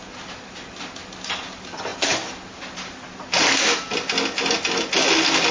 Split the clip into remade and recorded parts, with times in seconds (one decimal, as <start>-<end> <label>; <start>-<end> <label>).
0.0-5.5 recorded